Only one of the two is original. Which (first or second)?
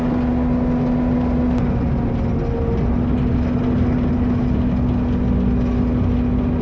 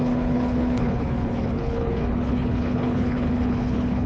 first